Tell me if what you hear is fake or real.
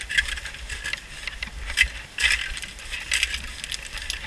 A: real